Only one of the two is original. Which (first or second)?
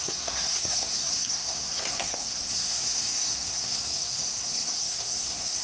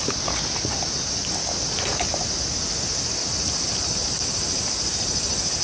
second